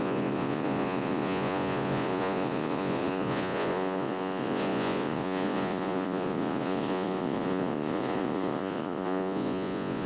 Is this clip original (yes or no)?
no